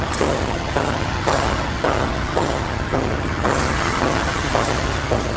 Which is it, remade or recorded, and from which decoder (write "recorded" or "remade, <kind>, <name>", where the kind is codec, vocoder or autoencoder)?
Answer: remade, vocoder, HiFi-GAN